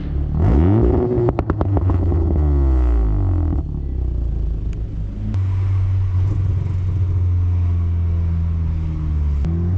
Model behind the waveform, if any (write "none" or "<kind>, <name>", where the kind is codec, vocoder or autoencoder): none